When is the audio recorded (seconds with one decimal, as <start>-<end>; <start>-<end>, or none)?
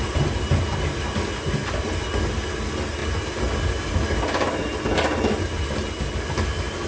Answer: 0.0-6.9